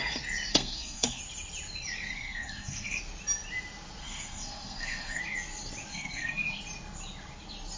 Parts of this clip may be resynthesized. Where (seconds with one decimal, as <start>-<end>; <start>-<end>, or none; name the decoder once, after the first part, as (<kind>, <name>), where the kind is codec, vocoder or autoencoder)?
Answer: 0.5-1.2 (codec, SNAC); 2.1-3.0; 4.0-5.2; 5.9-6.6